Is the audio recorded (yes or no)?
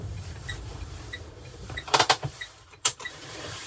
no